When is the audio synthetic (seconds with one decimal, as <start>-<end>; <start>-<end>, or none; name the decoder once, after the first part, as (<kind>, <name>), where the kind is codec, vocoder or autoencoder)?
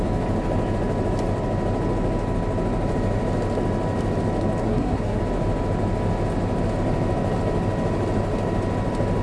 4.6-5.2 (codec, SNAC)